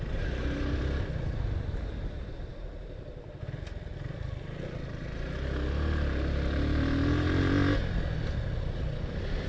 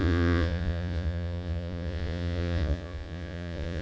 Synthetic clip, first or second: second